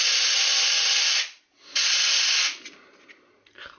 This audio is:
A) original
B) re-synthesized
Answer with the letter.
A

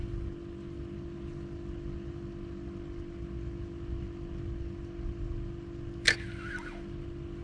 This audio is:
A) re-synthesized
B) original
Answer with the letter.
B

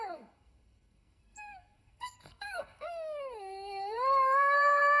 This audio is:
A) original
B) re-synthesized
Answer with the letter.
B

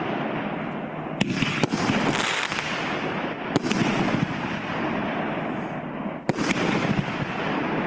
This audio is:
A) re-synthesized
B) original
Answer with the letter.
B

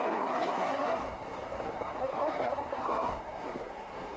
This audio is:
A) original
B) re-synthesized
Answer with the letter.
B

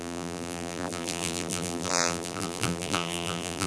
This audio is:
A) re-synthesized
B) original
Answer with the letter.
A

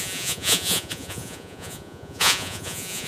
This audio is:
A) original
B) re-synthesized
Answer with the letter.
B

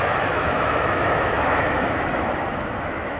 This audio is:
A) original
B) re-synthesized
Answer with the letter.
B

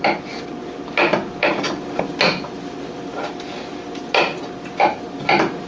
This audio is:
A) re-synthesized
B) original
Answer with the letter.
B